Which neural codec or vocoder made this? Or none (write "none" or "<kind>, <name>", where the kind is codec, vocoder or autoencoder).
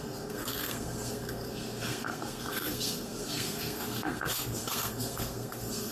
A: codec, SNAC